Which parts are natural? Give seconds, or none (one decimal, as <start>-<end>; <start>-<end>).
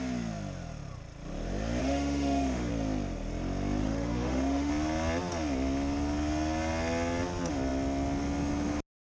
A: 0.0-1.8; 2.7-3.8; 4.7-9.1